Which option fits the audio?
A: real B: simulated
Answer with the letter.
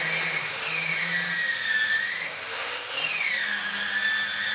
A